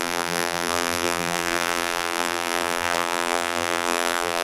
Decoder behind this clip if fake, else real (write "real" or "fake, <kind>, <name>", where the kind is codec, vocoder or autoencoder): fake, vocoder, BigVGAN v2